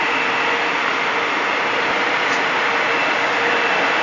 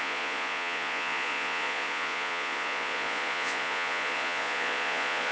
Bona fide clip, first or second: first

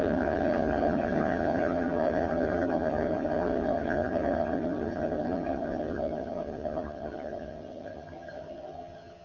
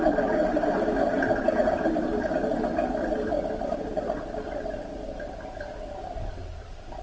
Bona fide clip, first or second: second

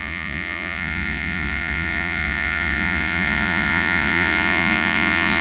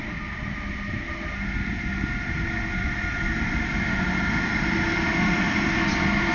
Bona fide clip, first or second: second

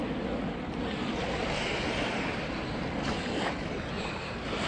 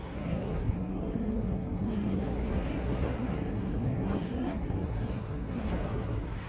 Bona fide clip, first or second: first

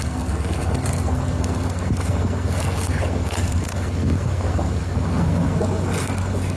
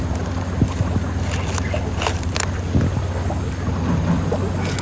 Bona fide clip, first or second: second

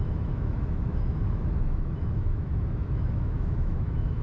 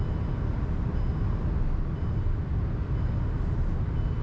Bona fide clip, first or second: second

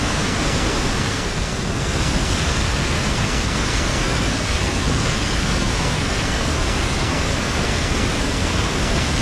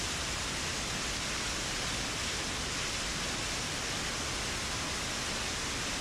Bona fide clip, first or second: second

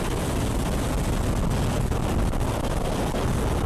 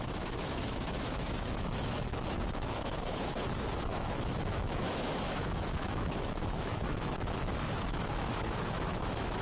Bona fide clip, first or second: first